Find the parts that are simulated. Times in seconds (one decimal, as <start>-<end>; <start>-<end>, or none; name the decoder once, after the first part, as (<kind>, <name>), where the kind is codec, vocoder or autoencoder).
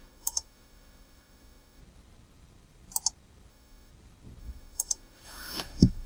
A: 0.0-1.8 (autoencoder, DAC-VAE); 3.5-3.9; 4.4-6.1